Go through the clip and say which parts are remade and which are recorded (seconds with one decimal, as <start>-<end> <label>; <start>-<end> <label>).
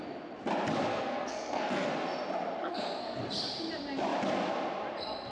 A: 0.0-0.9 recorded; 0.9-1.9 remade; 1.9-2.6 recorded; 2.6-3.2 remade; 3.2-5.3 recorded